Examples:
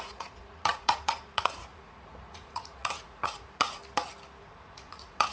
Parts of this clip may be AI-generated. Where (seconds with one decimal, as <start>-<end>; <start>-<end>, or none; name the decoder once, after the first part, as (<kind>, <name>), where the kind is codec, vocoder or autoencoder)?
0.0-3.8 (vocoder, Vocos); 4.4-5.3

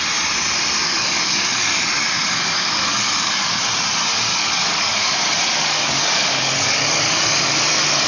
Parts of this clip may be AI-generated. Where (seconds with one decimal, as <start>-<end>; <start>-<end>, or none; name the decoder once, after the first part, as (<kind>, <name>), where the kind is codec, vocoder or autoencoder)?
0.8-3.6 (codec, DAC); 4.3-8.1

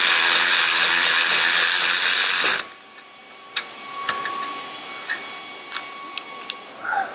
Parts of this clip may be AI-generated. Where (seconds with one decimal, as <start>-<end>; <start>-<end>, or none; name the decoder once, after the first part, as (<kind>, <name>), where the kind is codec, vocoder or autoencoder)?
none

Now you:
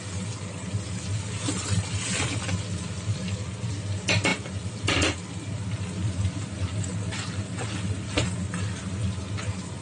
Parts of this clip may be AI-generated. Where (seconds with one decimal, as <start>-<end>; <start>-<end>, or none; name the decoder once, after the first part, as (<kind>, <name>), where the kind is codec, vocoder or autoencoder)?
none

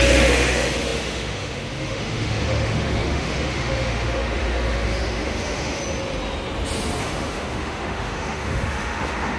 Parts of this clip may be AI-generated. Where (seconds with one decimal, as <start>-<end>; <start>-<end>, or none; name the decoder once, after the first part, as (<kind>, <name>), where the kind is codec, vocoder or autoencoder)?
0.0-5.8 (autoencoder, DAC-VAE); 7.0-9.4

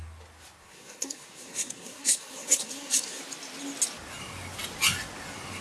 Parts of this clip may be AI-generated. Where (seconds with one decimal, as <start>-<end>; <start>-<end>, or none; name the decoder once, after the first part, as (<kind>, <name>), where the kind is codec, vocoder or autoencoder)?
0.6-3.2 (codec, SNAC)

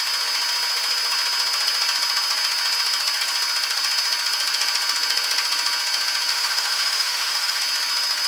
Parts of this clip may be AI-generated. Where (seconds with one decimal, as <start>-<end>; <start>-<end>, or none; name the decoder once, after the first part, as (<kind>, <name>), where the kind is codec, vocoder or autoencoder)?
6.3-7.6 (autoencoder, DAC-VAE)